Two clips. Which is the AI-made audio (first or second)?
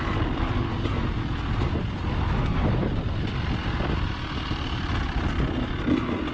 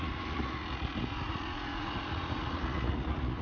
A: second